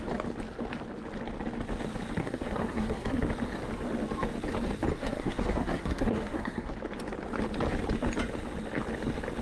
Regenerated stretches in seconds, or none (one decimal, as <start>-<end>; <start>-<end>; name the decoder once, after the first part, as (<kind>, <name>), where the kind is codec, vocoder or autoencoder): 2.2-3.2 (codec, SNAC); 5.0-6.7